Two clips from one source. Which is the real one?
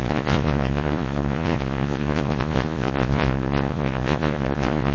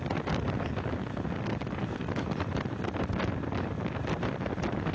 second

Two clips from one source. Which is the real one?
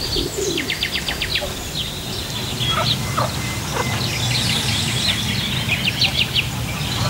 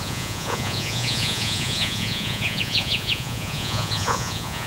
first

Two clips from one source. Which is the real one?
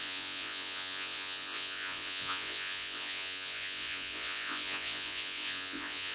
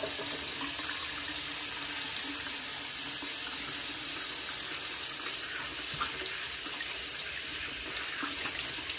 second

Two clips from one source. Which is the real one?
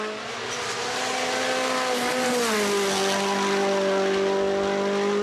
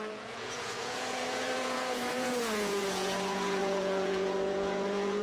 first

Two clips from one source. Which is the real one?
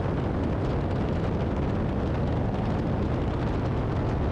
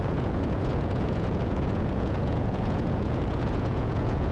first